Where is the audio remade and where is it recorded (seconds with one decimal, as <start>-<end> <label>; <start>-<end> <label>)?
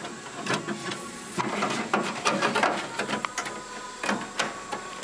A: 0.0-0.8 recorded; 0.8-1.4 remade; 1.4-5.0 recorded